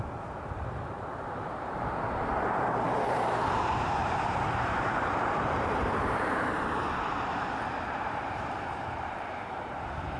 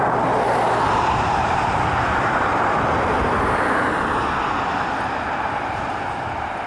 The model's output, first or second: first